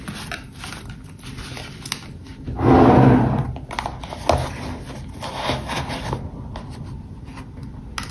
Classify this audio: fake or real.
real